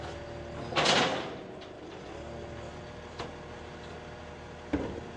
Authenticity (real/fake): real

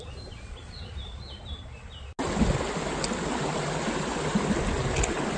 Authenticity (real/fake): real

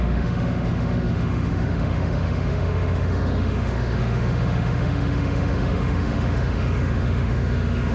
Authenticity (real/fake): fake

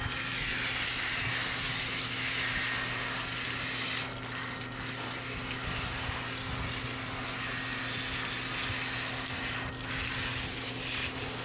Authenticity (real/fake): real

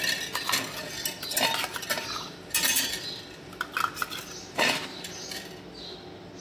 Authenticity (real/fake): real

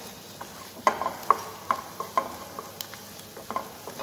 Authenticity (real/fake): real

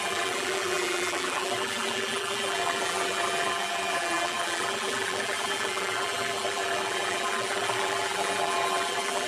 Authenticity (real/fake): fake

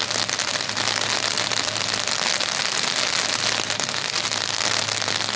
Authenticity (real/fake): real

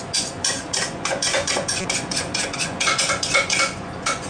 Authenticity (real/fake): fake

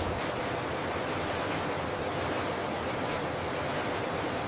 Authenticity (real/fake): real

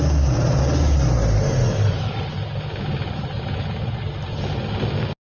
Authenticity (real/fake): real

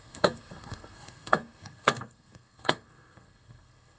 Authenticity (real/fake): fake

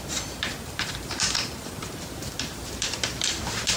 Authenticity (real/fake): fake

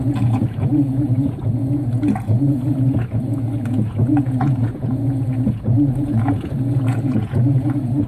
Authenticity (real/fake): fake